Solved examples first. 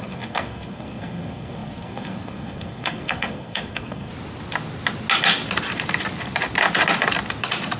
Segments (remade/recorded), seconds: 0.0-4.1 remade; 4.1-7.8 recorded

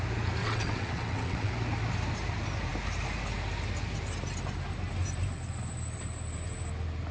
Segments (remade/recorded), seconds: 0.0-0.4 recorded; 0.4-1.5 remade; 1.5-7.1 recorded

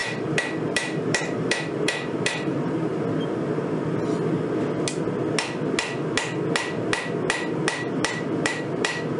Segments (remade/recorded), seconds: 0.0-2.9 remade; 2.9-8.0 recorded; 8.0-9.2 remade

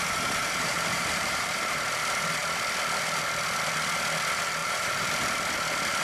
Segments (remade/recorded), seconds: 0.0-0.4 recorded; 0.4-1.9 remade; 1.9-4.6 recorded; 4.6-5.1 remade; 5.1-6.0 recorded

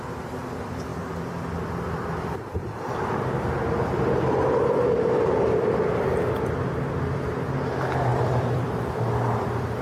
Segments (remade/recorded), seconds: 0.0-0.9 recorded; 0.9-3.2 remade; 3.2-8.1 recorded; 8.1-9.8 remade